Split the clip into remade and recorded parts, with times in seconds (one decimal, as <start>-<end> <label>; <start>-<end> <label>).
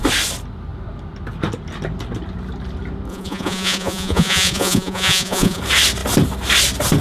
0.0-3.1 recorded; 3.1-5.6 remade; 5.6-7.0 recorded